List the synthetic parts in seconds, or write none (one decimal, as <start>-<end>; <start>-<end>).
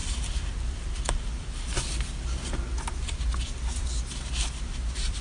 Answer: none